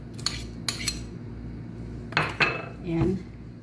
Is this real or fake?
real